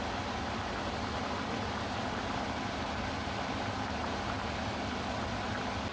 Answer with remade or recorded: recorded